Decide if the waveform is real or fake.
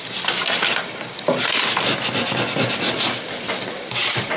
real